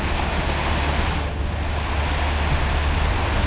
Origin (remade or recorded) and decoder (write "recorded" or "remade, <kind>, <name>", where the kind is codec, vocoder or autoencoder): recorded